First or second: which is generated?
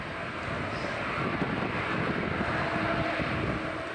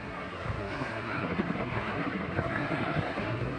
second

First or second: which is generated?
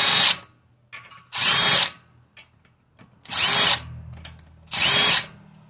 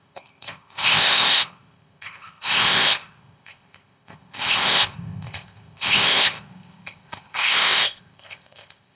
second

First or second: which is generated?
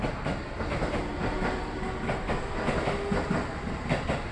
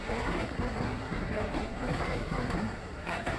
second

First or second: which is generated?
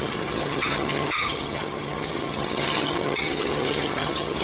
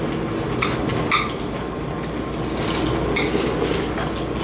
first